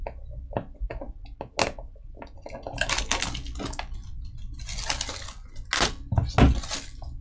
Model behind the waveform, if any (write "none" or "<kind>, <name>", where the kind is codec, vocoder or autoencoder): none